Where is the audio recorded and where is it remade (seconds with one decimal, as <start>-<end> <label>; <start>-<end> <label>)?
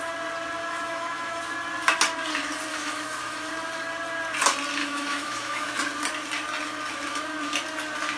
0.0-0.6 recorded; 0.6-1.4 remade; 1.4-2.7 recorded; 2.7-3.5 remade; 3.5-4.8 recorded; 4.8-5.8 remade; 5.8-8.2 recorded